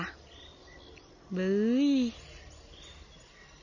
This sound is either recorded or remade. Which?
recorded